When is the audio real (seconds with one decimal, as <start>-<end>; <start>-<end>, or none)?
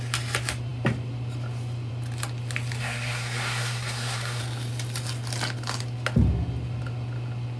0.0-2.8; 4.4-7.6